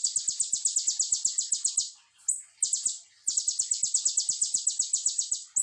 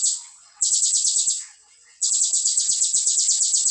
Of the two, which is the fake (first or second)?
second